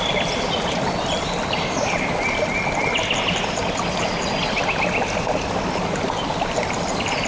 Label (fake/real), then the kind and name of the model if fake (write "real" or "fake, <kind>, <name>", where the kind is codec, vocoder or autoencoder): real